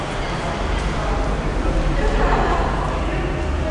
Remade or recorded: recorded